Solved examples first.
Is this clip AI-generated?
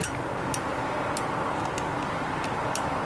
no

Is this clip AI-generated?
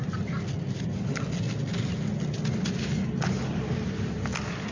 no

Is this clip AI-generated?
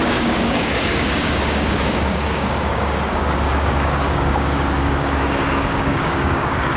yes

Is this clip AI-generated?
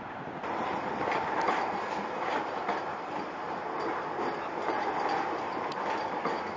no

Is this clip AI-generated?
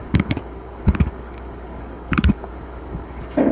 yes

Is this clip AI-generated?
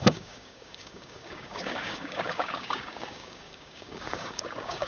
yes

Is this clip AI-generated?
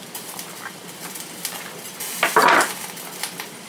no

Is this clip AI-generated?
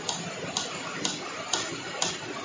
no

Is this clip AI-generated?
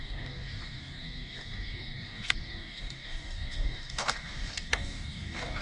yes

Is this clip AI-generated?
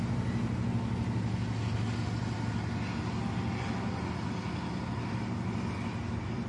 no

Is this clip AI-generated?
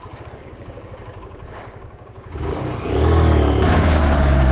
yes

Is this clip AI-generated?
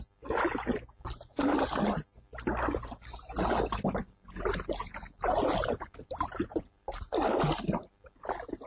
no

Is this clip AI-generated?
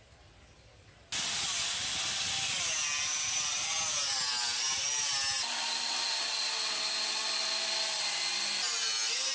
no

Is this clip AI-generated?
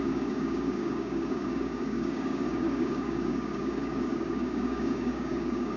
yes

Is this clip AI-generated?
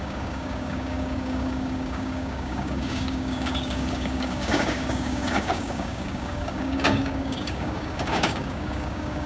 yes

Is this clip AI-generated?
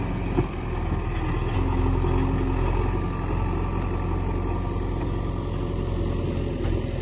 no